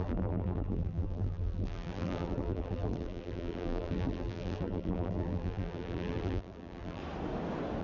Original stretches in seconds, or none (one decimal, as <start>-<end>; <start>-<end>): 7.0-7.8